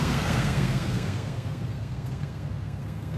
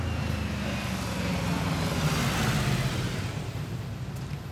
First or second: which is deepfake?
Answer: first